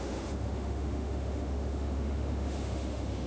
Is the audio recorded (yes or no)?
no